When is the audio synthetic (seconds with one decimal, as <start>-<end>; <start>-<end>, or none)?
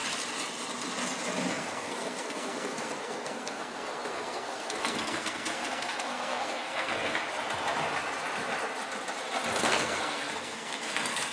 1.5-7.2; 9.6-11.3